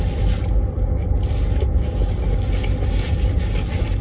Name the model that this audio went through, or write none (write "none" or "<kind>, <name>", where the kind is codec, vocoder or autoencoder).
none